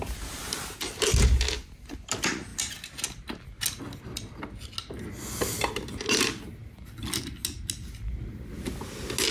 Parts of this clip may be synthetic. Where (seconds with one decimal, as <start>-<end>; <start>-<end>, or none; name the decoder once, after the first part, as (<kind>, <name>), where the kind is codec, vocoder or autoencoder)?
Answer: none